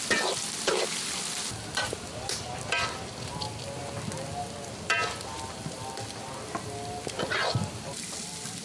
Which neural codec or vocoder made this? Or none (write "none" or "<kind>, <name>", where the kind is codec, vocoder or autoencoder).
none